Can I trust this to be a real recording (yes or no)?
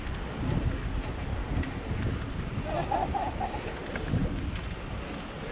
yes